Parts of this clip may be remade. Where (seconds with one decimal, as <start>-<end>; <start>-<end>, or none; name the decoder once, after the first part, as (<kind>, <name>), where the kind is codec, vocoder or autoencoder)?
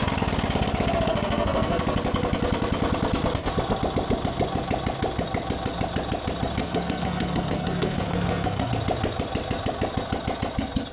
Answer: 1.1-1.8 (codec, SNAC); 6.6-8.7